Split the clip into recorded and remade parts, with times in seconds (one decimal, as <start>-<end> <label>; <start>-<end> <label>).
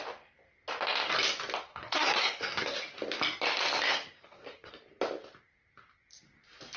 0.0-1.7 recorded; 1.7-2.8 remade; 2.8-3.9 recorded; 3.9-4.7 remade; 4.7-6.8 recorded